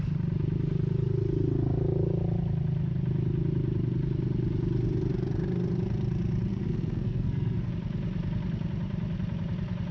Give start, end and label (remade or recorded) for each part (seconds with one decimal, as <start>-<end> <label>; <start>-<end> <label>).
0.0-6.5 recorded; 6.5-7.7 remade; 7.7-9.9 recorded